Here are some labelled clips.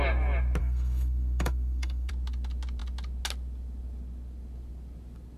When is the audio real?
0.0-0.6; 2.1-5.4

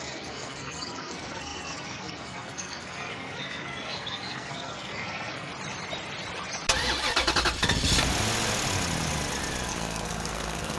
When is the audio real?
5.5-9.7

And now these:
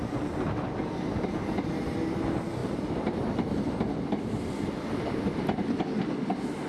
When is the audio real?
0.0-2.6; 4.3-6.7

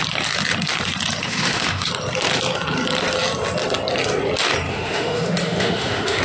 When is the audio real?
0.0-1.2; 1.9-4.7

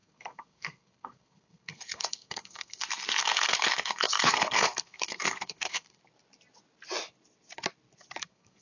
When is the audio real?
6.0-8.2

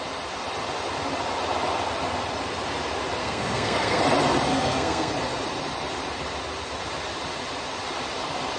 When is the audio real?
0.0-3.2; 4.0-4.5; 5.1-8.6